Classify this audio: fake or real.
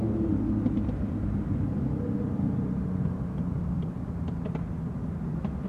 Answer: real